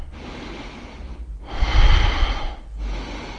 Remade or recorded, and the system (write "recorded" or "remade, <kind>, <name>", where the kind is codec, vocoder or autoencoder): recorded